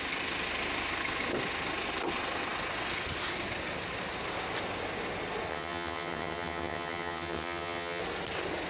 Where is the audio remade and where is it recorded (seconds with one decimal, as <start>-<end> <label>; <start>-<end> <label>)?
0.0-5.5 recorded; 5.5-8.0 remade; 8.0-8.7 recorded